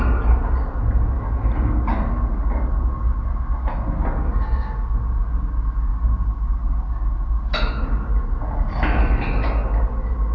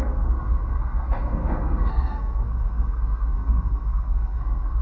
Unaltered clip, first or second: first